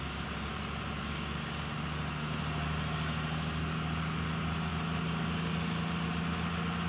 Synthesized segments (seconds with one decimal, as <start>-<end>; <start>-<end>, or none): none